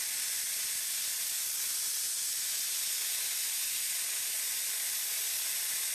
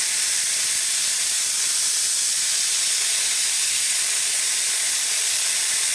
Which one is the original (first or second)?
first